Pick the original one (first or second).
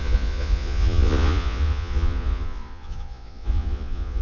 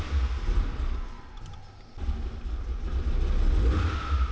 second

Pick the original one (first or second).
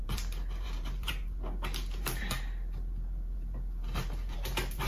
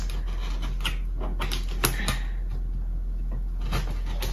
second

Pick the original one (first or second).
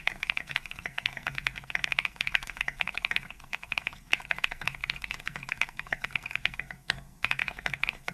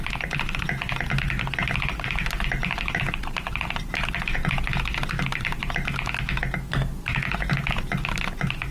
second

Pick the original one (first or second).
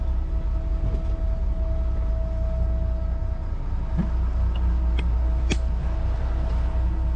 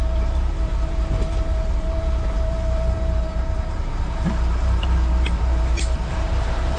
first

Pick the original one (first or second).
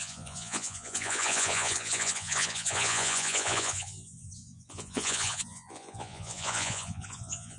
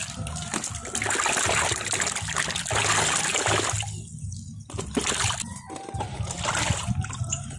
second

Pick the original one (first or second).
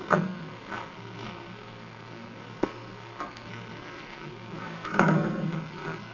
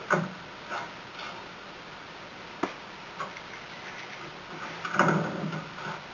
second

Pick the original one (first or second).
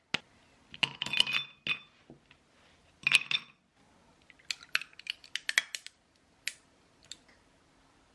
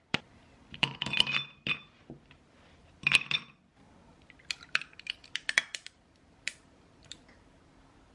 first